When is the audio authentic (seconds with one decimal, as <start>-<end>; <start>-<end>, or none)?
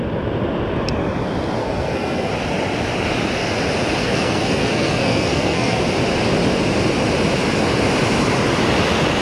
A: 0.0-1.6; 2.3-4.0; 5.8-9.2